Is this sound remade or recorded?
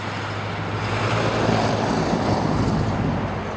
recorded